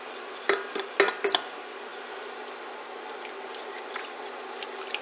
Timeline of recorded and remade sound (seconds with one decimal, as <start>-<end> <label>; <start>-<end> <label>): 0.0-5.0 recorded